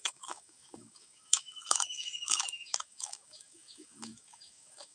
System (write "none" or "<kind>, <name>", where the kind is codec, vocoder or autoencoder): autoencoder, DAC-VAE